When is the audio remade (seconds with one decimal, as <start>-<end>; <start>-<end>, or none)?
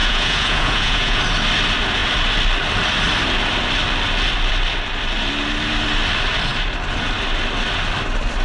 0.0-1.2